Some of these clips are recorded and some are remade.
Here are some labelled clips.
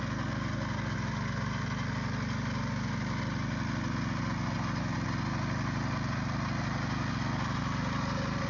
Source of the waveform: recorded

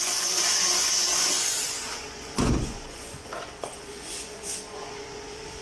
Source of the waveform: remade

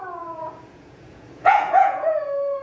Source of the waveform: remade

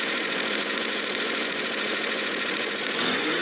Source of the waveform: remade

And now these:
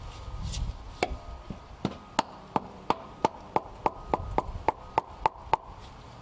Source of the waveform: recorded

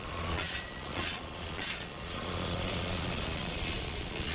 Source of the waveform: remade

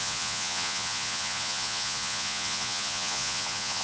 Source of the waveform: remade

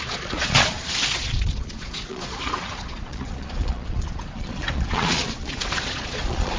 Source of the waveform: remade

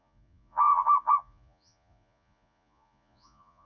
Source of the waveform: remade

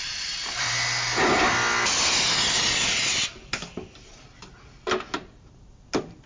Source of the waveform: recorded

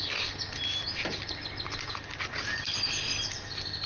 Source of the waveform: recorded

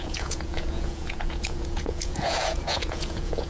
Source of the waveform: remade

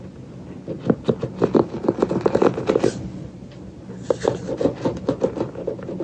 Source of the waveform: recorded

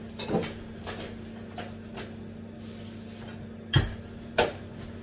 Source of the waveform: recorded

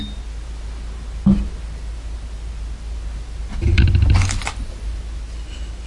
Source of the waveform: recorded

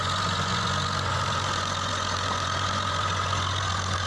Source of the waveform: remade